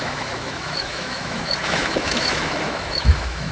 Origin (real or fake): fake